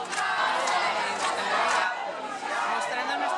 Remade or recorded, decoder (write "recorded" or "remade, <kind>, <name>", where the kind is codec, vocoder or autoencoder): recorded